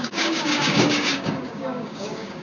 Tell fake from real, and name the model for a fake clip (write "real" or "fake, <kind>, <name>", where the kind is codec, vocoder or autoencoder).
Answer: fake, codec, DAC